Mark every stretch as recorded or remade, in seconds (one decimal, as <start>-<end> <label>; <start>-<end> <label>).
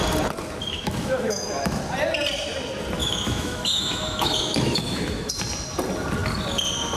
0.0-0.6 recorded; 0.6-1.8 remade; 1.8-3.0 recorded; 3.0-5.3 remade; 5.3-7.0 recorded